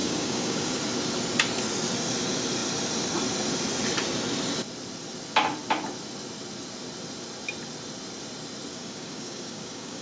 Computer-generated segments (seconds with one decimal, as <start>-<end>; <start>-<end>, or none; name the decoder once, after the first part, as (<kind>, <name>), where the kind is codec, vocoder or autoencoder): 0.0-0.8 (codec, DAC); 8.7-10.0